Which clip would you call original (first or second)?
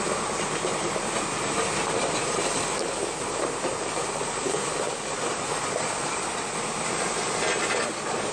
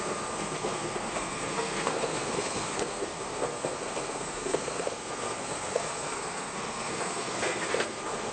first